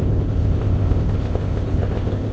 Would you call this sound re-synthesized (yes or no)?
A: yes